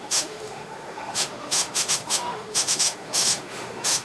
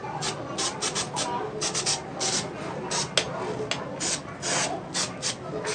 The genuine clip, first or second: second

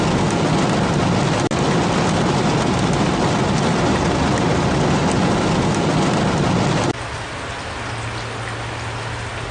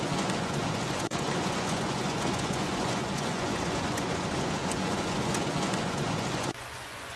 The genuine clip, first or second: first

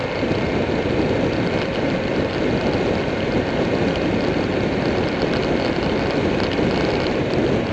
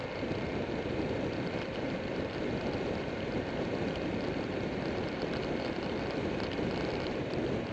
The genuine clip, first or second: first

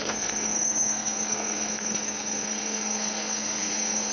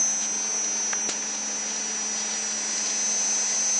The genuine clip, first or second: second